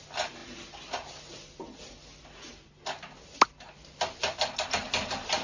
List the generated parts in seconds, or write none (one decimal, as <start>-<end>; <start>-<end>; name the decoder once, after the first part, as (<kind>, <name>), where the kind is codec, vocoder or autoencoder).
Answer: none